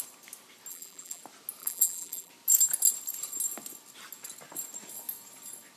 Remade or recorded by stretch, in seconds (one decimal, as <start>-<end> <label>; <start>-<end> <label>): 0.0-0.7 recorded; 0.7-1.2 remade; 1.2-1.6 recorded; 1.6-2.3 remade; 2.3-5.8 recorded